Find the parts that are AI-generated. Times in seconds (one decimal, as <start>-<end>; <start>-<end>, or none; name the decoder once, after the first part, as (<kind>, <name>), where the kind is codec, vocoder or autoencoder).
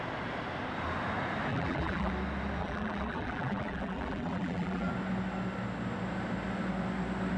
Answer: 1.5-2.1 (vocoder, BigVGAN v2); 2.6-4.9